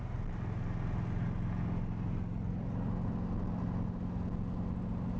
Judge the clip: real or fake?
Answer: real